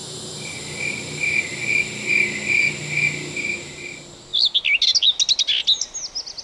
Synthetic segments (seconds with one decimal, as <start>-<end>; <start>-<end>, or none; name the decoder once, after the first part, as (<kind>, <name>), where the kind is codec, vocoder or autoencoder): 0.0-0.6 (vocoder, BigVGAN v2)